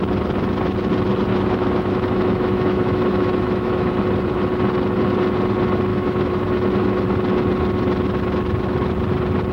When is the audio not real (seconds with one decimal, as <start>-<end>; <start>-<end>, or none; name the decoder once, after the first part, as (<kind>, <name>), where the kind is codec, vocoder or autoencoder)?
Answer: 1.3-3.9 (autoencoder, DAC-VAE); 5.9-6.5